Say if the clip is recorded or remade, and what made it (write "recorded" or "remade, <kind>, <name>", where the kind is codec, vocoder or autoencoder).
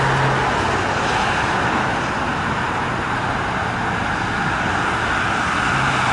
recorded